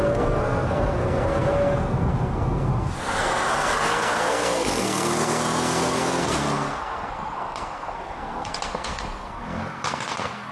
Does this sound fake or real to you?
fake